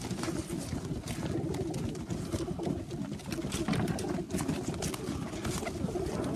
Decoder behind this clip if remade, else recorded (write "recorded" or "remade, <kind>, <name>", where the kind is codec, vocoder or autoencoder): recorded